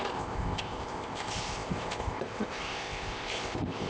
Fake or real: fake